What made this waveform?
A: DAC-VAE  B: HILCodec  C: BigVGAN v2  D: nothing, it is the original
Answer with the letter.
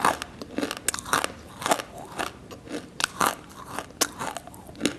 D